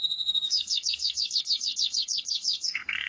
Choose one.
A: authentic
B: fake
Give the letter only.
B